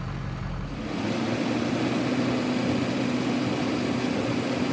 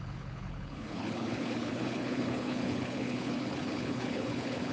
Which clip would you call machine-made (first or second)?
second